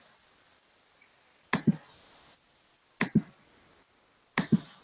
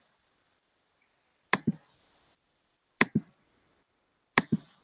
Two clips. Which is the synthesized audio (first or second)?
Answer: second